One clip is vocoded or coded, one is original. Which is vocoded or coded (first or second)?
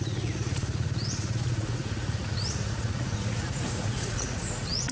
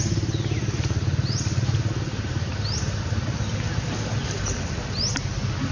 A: first